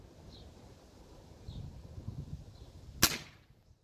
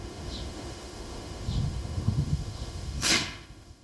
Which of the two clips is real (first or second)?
first